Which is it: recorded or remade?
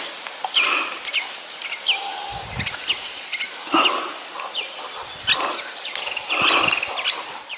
recorded